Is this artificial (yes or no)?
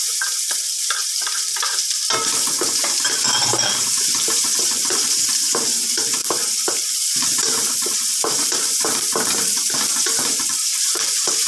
yes